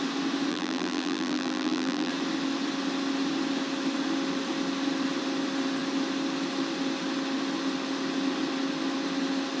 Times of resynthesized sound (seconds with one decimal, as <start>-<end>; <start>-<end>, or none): 0.5-2.1